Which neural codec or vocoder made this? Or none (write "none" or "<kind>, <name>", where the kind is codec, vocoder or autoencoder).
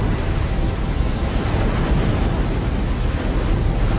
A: none